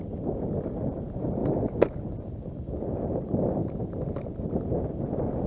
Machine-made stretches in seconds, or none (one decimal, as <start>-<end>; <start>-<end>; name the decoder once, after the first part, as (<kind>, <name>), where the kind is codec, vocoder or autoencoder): 0.0-1.4 (vocoder, BigVGAN v2); 2.0-3.6; 4.5-5.5